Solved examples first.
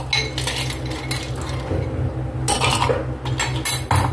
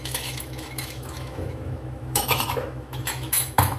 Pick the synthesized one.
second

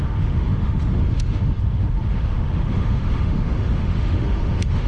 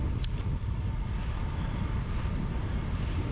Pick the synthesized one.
first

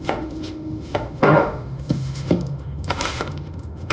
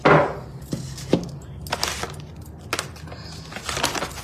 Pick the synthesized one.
first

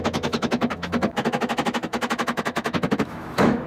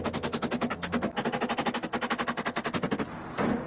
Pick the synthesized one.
first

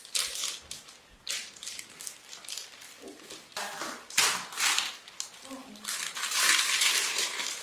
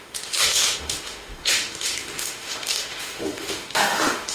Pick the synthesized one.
second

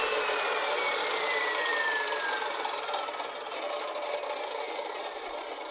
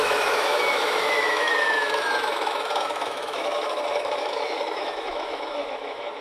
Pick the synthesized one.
second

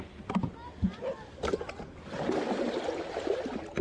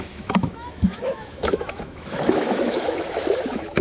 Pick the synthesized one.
second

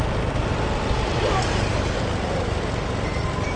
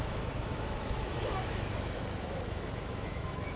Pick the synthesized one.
second